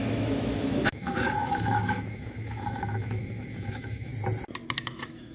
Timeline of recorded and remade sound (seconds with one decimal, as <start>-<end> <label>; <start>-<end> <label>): 0.0-4.1 remade; 4.1-4.8 recorded; 4.8-5.3 remade